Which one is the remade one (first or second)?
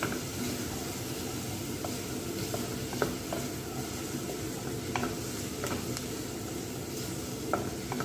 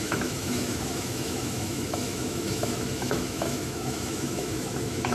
second